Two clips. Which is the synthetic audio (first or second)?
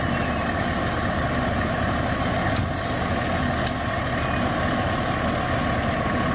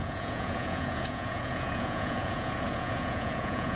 second